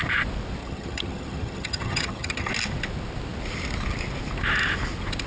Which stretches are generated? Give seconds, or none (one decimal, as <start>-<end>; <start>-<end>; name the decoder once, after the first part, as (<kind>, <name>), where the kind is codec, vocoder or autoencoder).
0.6-2.5 (vocoder, HiFi-GAN)